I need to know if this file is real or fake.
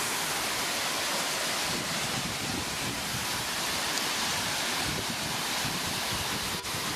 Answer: real